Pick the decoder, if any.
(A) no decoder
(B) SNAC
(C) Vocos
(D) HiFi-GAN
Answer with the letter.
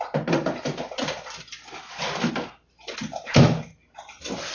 A